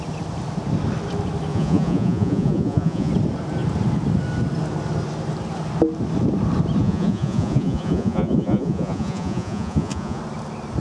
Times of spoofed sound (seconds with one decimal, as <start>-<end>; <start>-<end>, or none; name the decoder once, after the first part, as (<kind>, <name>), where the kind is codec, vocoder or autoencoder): 1.5-3.1 (vocoder, Vocos); 6.8-10.2